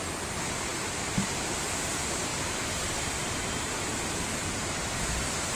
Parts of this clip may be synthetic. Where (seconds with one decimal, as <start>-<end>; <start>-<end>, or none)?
none